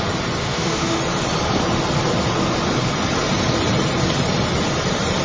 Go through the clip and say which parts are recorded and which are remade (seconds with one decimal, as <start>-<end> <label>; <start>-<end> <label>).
0.0-0.4 recorded; 0.4-1.0 remade; 1.0-5.2 recorded

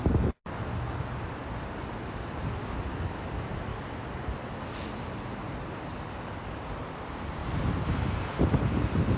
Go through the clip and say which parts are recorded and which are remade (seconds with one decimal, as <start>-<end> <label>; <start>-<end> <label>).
0.0-0.4 remade; 0.4-1.0 recorded; 1.0-3.7 remade; 3.7-6.9 recorded; 6.9-7.4 remade; 7.4-8.4 recorded; 8.4-9.2 remade